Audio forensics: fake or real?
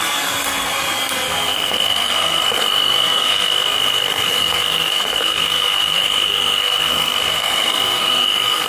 fake